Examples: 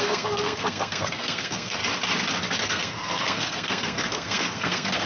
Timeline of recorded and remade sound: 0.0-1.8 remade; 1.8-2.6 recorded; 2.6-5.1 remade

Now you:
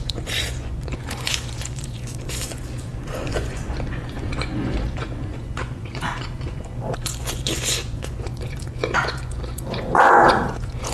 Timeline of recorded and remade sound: 0.0-10.9 remade

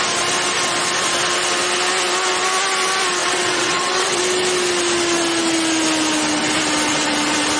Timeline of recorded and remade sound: 0.0-3.2 recorded; 3.2-4.2 remade; 4.2-7.6 recorded